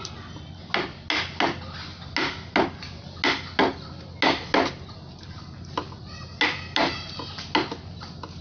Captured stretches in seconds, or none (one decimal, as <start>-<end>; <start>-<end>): 0.0-8.4